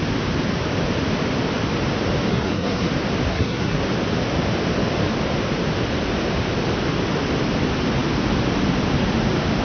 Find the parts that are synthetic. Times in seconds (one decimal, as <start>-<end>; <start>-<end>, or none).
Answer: 2.3-2.9; 3.3-3.8